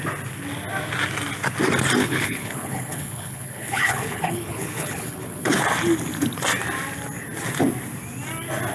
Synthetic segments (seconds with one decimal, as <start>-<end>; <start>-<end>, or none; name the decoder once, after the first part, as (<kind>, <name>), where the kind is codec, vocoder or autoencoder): 2.0-5.6 (codec, HILCodec)